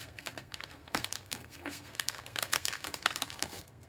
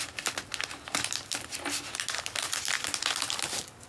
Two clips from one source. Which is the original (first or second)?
second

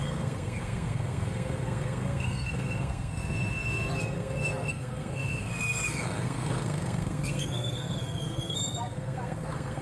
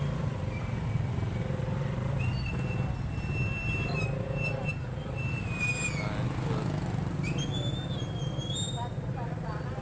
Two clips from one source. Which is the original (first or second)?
second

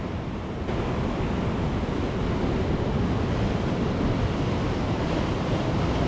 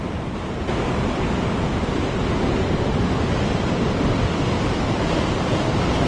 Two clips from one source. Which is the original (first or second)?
first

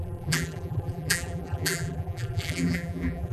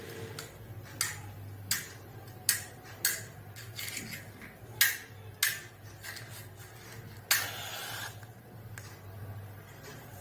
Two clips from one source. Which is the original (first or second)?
second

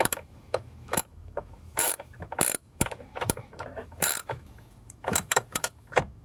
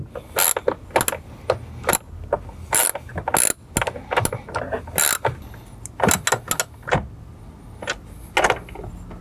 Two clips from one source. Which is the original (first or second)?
second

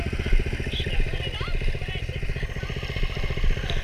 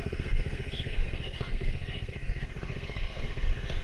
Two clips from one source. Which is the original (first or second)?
first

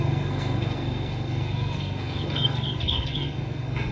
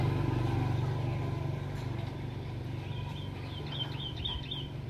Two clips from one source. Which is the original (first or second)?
second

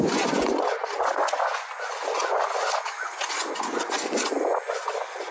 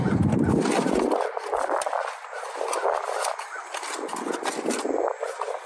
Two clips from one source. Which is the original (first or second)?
second